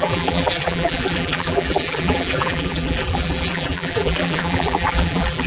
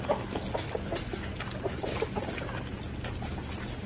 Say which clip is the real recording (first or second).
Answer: second